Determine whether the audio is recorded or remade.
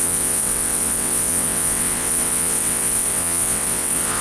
remade